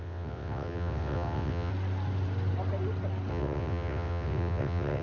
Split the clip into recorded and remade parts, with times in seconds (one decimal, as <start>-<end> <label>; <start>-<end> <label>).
0.0-1.7 remade; 1.7-3.3 recorded; 3.3-5.0 remade